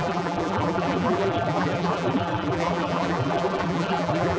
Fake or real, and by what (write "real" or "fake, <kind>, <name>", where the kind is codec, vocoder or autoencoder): fake, vocoder, BigVGAN v2